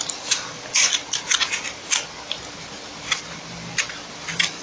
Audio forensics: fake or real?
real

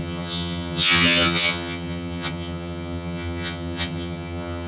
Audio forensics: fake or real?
fake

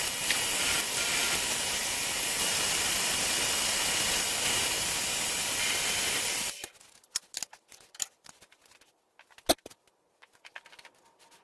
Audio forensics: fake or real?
real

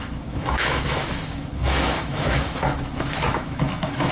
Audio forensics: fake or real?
fake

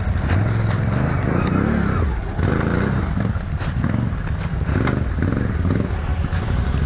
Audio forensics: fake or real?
fake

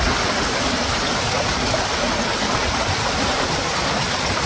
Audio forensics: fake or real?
real